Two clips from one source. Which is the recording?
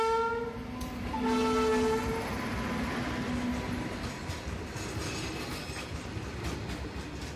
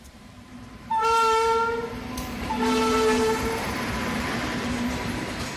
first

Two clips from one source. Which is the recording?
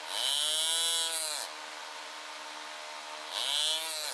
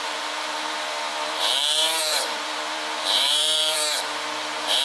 first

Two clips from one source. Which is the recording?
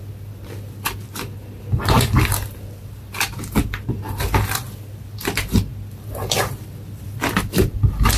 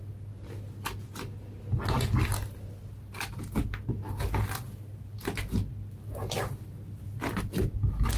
second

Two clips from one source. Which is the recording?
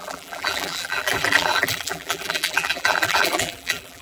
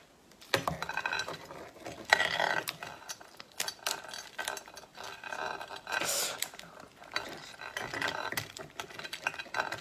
second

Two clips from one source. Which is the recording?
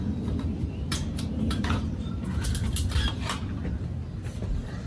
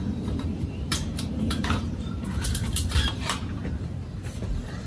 first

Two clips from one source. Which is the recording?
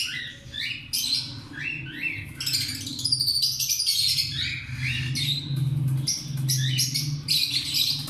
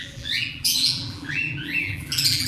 first